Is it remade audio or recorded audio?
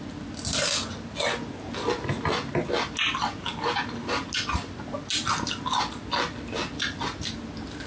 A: recorded